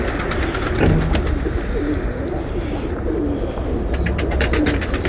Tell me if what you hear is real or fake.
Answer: real